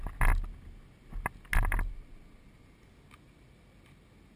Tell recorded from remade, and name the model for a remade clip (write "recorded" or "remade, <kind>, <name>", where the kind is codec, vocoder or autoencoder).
recorded